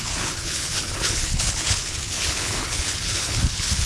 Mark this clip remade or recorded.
remade